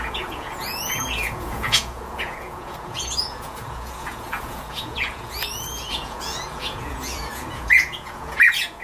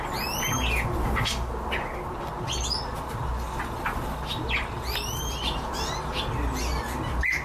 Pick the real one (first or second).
second